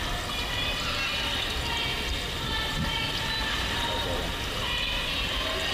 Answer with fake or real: real